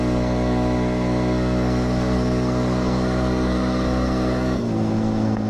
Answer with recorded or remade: remade